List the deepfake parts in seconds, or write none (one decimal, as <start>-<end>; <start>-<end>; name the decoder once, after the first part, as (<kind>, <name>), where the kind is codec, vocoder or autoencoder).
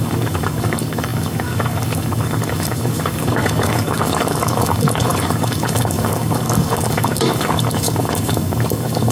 0.0-9.1 (codec, DAC)